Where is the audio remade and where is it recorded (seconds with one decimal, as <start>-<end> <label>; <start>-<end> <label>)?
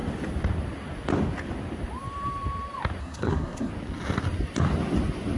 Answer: 0.0-3.0 recorded; 3.0-3.7 remade; 3.7-5.4 recorded